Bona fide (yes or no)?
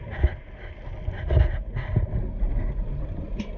yes